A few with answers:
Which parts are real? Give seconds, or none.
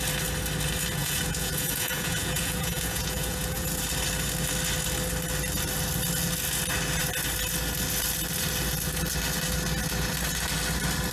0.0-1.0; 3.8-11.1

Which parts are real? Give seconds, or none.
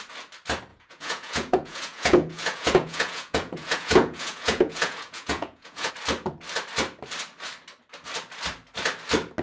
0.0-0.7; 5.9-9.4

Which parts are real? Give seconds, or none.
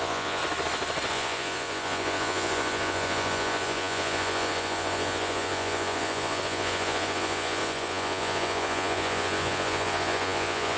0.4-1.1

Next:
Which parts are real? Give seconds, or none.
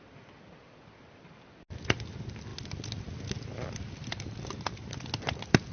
0.0-5.7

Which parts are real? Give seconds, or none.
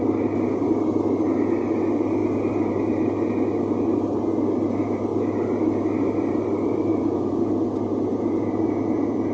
0.0-6.9; 7.5-8.1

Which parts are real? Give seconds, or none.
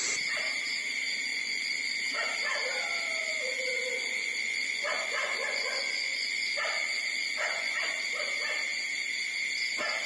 0.0-1.3; 2.0-3.2; 8.3-10.1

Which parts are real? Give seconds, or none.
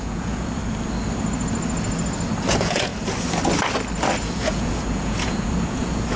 0.6-2.4; 2.9-4.2